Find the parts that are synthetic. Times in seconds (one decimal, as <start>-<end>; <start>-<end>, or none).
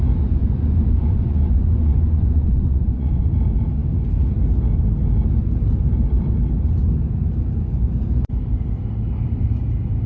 0.4-3.3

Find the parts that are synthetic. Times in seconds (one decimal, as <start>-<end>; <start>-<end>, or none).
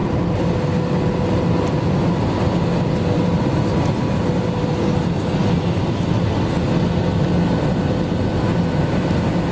none